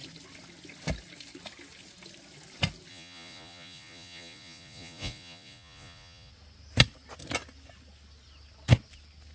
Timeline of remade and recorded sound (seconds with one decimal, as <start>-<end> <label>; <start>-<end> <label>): 0.0-2.9 recorded; 2.9-6.3 remade; 6.3-9.3 recorded